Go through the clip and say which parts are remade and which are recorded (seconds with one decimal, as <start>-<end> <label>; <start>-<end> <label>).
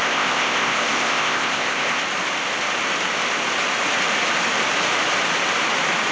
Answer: 0.0-2.0 remade; 2.0-6.1 recorded